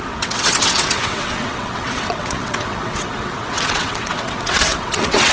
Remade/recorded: remade